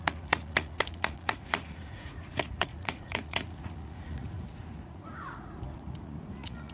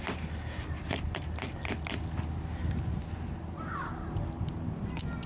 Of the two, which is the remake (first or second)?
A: first